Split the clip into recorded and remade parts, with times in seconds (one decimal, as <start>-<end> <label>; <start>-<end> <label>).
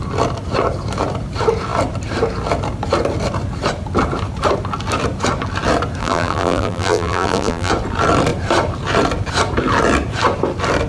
0.0-6.0 recorded; 6.0-7.7 remade; 7.7-10.9 recorded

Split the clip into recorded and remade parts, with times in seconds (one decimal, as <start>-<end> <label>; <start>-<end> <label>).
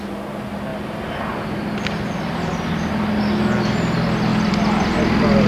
0.0-0.7 recorded; 0.7-2.9 remade; 2.9-4.3 recorded; 4.3-5.5 remade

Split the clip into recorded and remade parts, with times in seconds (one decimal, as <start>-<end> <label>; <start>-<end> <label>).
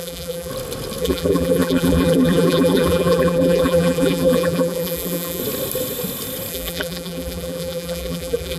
0.0-0.5 remade; 0.5-1.0 recorded; 1.0-5.4 remade; 5.4-6.5 recorded; 6.5-8.6 remade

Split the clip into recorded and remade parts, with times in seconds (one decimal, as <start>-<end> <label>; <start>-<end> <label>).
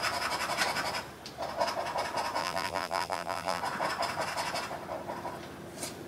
0.0-2.4 recorded; 2.4-3.6 remade; 3.6-6.1 recorded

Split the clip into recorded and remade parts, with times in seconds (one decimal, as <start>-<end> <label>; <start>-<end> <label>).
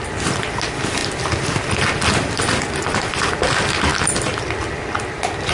0.0-1.0 recorded; 1.0-2.5 remade; 2.5-3.9 recorded; 3.9-4.8 remade; 4.8-5.5 recorded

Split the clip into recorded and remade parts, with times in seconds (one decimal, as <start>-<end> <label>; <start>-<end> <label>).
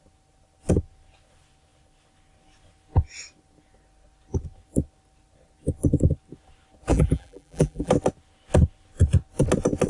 0.0-6.9 recorded; 6.9-7.9 remade; 7.9-9.9 recorded